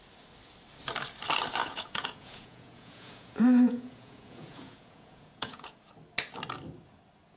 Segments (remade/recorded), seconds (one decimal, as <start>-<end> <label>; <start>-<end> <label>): 0.0-1.6 recorded; 1.6-5.9 remade; 5.9-7.4 recorded